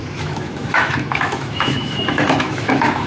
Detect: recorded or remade remade